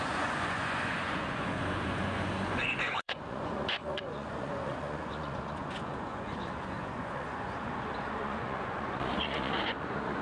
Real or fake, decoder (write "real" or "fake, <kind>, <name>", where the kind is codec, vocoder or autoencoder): fake, vocoder, Vocos